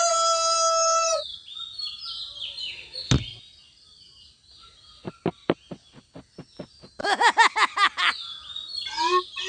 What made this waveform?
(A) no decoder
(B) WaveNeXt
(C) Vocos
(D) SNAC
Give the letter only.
A